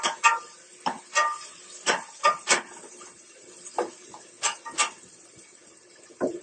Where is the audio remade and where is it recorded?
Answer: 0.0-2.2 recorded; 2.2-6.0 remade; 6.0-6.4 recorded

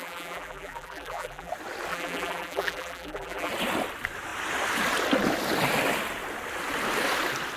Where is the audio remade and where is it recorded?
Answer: 0.0-1.5 remade; 1.5-1.9 recorded; 1.9-3.5 remade; 3.5-7.6 recorded